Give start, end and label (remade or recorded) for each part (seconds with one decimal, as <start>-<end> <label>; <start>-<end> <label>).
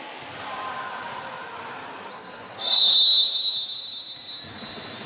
0.0-2.1 recorded; 2.1-2.8 remade; 2.8-5.1 recorded